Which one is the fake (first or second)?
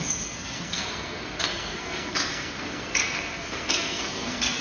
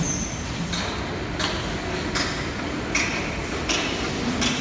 first